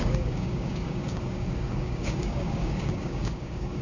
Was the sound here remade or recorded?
remade